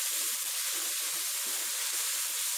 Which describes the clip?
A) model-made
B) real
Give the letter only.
B